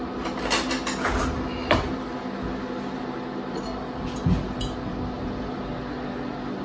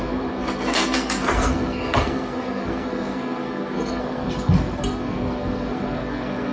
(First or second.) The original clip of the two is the first